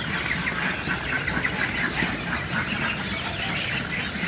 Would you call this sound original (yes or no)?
yes